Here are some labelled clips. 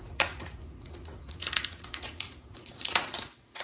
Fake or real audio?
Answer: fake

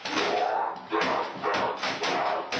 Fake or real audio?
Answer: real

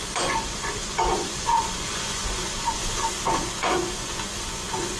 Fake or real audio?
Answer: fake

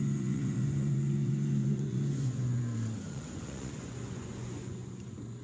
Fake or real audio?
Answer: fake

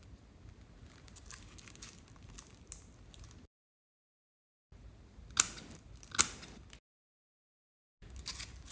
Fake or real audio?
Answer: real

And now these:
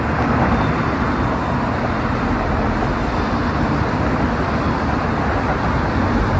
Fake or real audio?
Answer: real